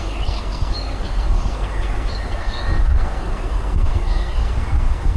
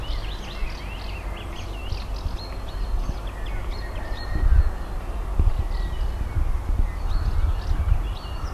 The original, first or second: second